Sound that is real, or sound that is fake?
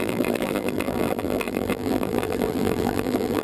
fake